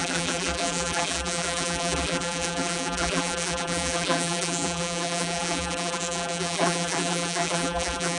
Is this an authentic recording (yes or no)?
no